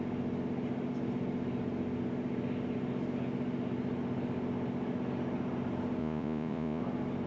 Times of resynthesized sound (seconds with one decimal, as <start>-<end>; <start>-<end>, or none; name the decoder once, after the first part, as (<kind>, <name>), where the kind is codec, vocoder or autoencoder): 6.0-6.8 (vocoder, Vocos)